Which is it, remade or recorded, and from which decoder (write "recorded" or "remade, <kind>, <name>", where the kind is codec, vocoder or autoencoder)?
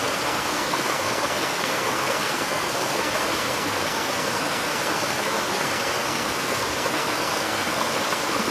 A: remade, codec, SNAC